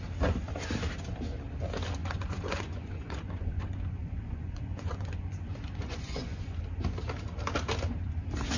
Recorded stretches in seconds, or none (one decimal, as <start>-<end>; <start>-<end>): 0.0-2.0; 6.6-8.6